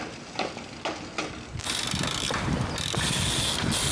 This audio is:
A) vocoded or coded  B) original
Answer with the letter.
B